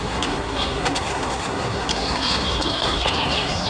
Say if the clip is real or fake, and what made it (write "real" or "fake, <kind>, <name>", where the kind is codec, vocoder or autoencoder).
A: fake, codec, SNAC